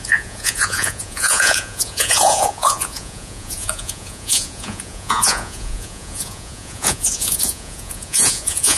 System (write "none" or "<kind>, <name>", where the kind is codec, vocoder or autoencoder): vocoder, Vocos